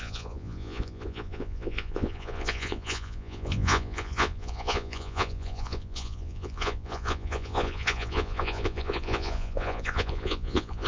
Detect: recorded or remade remade